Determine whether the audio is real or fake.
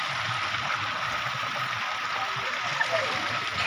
real